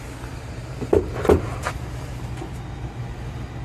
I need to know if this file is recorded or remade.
recorded